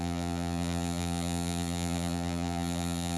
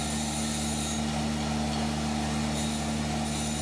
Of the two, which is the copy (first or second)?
first